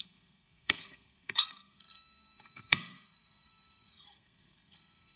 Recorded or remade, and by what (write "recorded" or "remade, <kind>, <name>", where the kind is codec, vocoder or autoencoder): remade, codec, SNAC